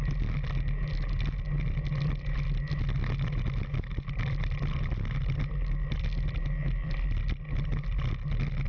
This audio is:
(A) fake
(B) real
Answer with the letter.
B